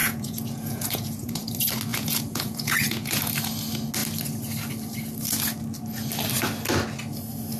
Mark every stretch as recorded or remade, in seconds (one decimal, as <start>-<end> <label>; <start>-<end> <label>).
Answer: 0.0-1.5 remade; 1.5-1.9 recorded; 1.9-3.3 remade; 3.3-7.6 recorded